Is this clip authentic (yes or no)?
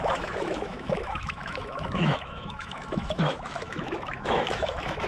no